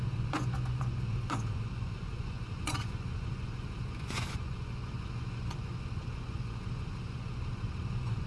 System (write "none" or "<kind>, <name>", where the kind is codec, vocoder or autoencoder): vocoder, Vocos